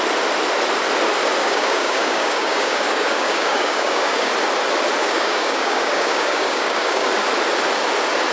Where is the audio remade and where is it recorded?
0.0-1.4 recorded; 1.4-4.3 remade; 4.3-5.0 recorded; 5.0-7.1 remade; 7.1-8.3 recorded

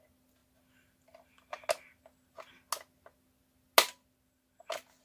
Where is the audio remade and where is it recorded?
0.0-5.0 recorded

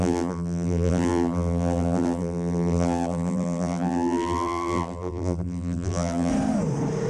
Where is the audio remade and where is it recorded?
0.0-6.3 remade; 6.3-7.1 recorded

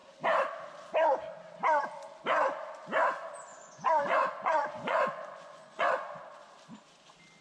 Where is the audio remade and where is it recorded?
0.0-3.5 recorded; 3.5-5.9 remade; 5.9-7.4 recorded

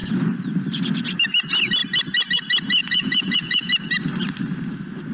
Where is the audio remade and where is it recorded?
0.0-2.8 recorded; 2.8-3.7 remade; 3.7-5.1 recorded

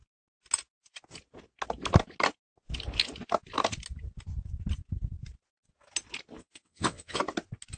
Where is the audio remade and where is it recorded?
0.0-6.4 recorded; 6.4-7.2 remade; 7.2-7.8 recorded